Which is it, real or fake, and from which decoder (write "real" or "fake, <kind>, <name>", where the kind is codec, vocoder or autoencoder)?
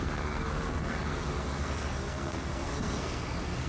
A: fake, codec, SNAC